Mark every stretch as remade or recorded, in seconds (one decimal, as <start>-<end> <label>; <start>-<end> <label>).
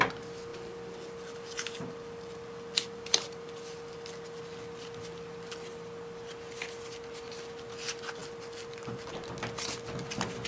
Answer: 0.0-0.5 recorded; 0.5-4.4 remade; 4.4-8.2 recorded; 8.2-9.1 remade; 9.1-10.5 recorded